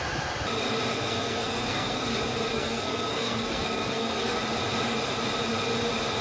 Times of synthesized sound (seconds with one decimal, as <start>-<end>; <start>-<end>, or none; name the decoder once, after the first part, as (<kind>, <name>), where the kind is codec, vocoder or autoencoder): 0.9-2.0 (codec, SNAC); 2.5-4.4